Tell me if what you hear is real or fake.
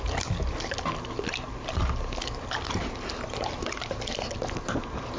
real